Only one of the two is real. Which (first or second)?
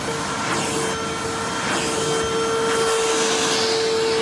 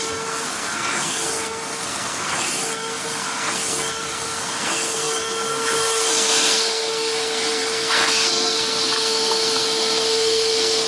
first